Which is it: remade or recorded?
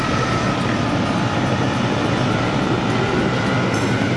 recorded